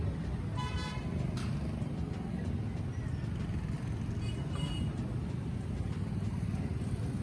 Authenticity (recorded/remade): recorded